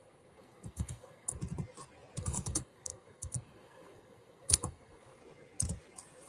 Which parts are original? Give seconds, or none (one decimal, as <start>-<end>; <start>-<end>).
1.4-2.2; 5.2-6.3